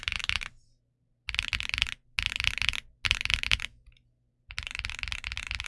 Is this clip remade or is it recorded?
recorded